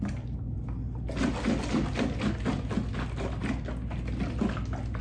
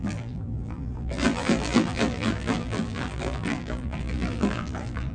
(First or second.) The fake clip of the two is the second